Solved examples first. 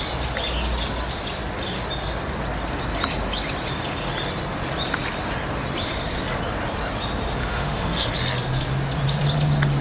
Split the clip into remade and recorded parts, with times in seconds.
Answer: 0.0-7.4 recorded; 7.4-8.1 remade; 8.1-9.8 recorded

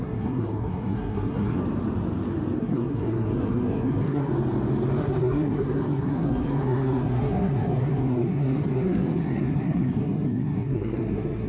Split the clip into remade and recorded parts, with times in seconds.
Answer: 0.0-1.6 remade; 1.6-2.6 recorded; 2.6-4.3 remade; 4.3-5.0 recorded; 5.0-11.5 remade

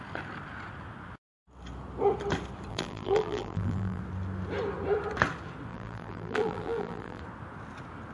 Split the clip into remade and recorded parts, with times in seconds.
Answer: 0.0-2.7 recorded; 2.7-4.0 remade; 4.0-5.7 recorded; 5.7-7.2 remade; 7.2-8.1 recorded

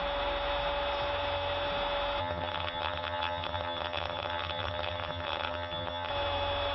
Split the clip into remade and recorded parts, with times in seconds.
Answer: 0.0-2.2 recorded; 2.2-6.1 remade; 6.1-6.7 recorded

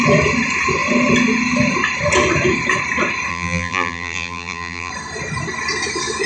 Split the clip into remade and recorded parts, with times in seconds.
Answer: 0.0-3.3 recorded; 3.3-4.9 remade; 4.9-6.3 recorded

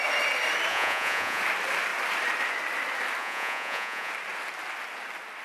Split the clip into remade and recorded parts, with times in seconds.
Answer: 0.0-0.7 recorded; 0.7-1.4 remade; 1.4-3.2 recorded; 3.2-4.1 remade; 4.1-5.4 recorded